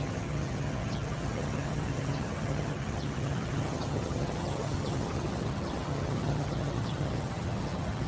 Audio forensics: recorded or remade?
remade